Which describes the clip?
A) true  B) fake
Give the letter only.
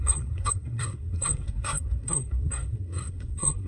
B